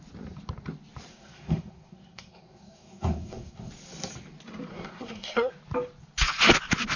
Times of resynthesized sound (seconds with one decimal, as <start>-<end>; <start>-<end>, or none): 1.1-3.7; 4.7-5.5